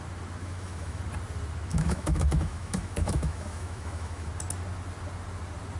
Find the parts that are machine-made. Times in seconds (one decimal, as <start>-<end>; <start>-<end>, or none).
0.4-1.0; 1.7-4.3

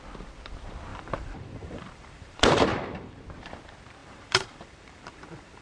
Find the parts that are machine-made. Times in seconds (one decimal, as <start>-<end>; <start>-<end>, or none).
0.9-3.2; 4.0-5.6

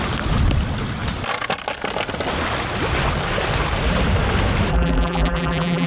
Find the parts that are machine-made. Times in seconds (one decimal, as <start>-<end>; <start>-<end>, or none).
4.7-5.9

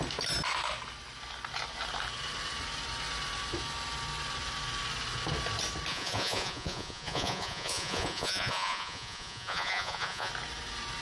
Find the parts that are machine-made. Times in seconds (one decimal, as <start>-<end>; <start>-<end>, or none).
5.9-10.3

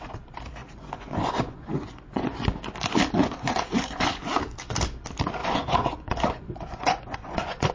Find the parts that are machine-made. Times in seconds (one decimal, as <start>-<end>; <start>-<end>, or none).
0.6-2.4; 3.2-4.2; 5.4-7.7

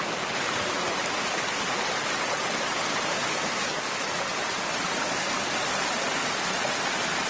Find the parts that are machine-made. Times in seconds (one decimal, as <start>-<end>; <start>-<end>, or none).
none

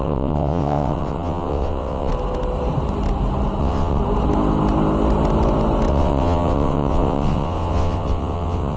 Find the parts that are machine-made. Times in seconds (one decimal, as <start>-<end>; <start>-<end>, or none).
0.0-2.1; 3.6-4.0; 5.9-8.8